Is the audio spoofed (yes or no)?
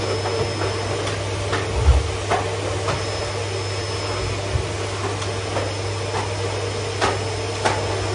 no